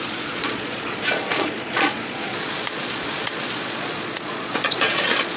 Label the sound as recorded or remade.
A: remade